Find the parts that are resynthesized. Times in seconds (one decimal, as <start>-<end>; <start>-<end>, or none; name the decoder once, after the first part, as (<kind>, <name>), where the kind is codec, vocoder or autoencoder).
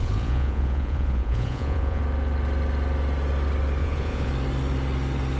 0.0-2.0 (vocoder, Vocos); 3.8-4.3